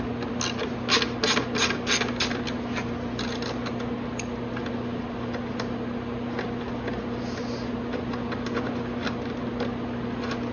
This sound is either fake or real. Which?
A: real